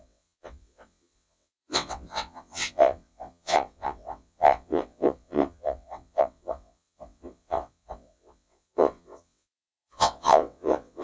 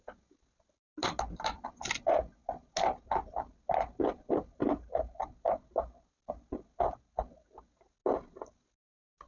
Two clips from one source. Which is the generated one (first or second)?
first